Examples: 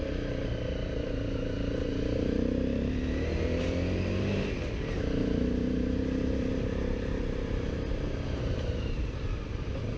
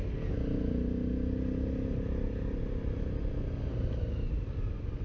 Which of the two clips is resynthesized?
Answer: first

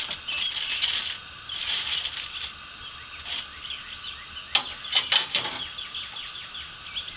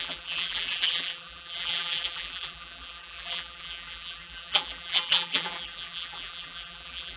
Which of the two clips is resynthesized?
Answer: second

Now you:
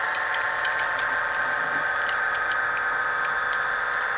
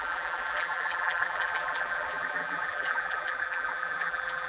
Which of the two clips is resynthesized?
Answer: second